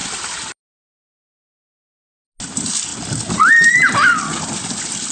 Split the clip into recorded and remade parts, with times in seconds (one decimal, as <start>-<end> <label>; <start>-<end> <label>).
0.0-5.1 recorded